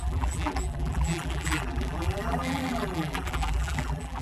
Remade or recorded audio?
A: remade